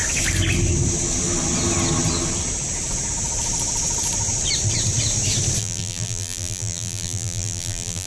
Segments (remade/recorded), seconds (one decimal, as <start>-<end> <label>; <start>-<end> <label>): 0.0-5.6 recorded; 5.6-8.1 remade